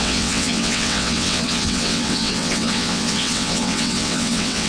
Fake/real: fake